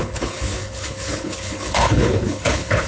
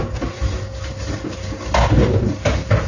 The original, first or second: second